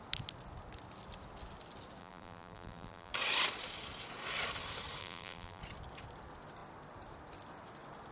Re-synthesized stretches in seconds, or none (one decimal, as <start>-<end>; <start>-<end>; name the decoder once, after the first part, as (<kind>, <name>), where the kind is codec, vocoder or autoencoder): 2.0-3.1 (vocoder, BigVGAN v2); 5.0-5.6

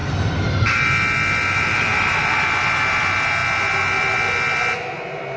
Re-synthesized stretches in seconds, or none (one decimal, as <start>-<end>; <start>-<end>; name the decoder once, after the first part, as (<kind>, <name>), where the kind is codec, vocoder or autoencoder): 0.0-0.7 (vocoder, BigVGAN v2)

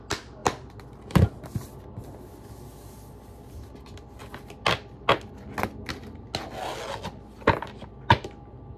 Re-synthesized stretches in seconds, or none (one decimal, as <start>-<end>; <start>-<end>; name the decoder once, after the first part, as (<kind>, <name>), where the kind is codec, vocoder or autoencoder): none

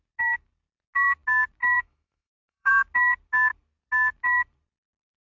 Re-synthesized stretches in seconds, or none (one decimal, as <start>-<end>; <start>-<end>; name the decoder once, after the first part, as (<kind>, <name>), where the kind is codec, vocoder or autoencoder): 1.6-2.7 (autoencoder, DAC-VAE)

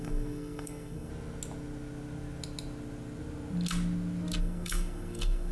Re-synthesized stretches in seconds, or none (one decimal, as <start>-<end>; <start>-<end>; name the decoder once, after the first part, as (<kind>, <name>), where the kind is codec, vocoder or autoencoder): 0.0-1.1 (codec, SNAC); 4.4-5.5

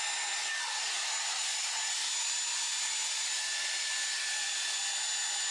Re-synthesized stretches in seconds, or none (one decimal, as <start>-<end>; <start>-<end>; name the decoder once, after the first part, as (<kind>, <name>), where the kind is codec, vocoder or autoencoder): none